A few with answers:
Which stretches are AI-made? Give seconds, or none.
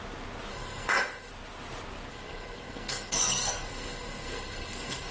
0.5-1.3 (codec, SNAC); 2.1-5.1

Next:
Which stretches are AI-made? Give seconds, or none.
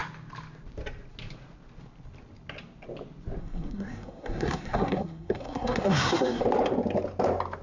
3.4-6.4 (codec, SNAC)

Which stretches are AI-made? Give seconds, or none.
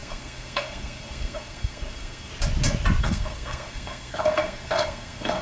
0.0-2.3 (codec, SNAC); 3.0-5.4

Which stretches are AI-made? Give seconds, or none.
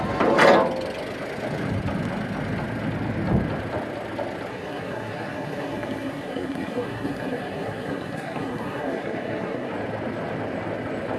4.5-9.7 (codec, SNAC)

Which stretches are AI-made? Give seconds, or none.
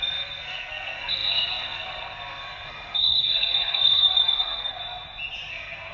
0.0-4.8 (codec, SNAC); 5.5-5.9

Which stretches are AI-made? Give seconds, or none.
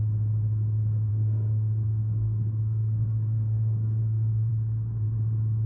1.1-4.5 (codec, SNAC)